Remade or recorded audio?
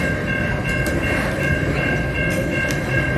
recorded